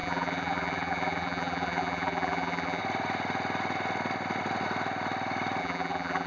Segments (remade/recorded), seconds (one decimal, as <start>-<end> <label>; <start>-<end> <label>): 0.0-2.8 remade; 2.8-5.6 recorded; 5.6-6.3 remade